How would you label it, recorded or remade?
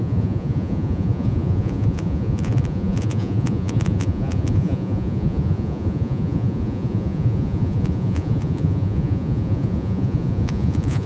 remade